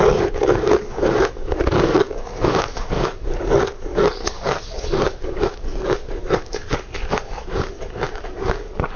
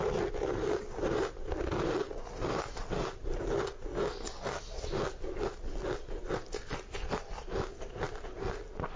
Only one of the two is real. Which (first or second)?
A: second